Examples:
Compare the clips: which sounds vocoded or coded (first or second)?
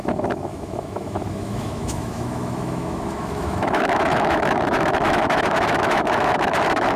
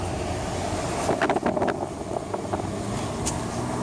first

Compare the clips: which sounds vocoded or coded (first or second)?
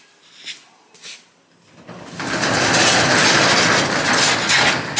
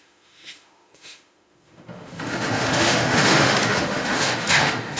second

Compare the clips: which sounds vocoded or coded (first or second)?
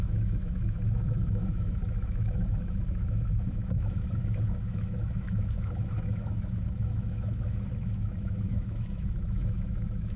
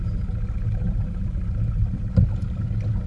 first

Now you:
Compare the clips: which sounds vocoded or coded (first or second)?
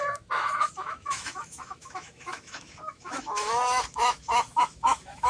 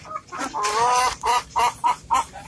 first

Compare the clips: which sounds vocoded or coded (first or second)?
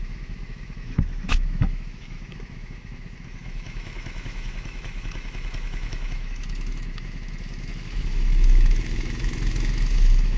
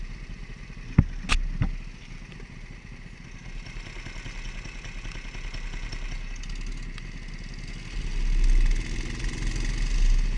first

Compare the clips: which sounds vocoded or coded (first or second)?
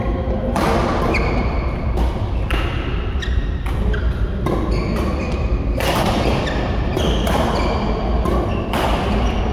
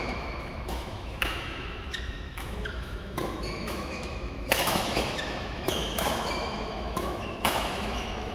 second